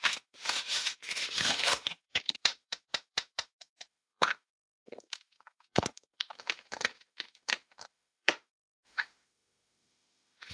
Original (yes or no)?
no